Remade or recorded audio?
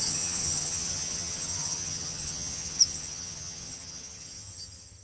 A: remade